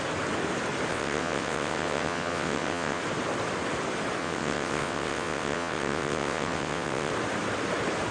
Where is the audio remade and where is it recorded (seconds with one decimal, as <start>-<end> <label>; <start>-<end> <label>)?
0.0-0.9 recorded; 0.9-3.0 remade; 3.0-4.2 recorded; 4.2-7.1 remade; 7.1-8.1 recorded